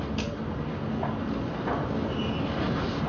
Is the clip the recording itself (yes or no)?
yes